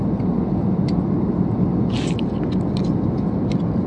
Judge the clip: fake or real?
real